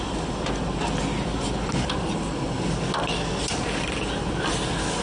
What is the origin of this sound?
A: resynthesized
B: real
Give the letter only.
B